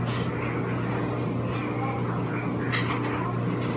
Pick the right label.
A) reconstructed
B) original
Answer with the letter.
B